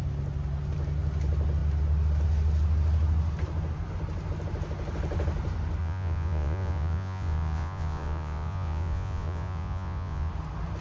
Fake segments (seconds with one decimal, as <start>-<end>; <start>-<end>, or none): 5.8-10.3